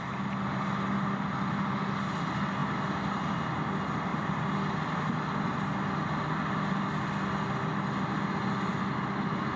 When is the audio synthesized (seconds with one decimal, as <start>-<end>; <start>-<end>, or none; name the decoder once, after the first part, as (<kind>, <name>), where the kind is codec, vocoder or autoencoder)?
none